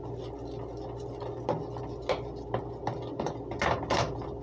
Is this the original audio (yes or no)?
yes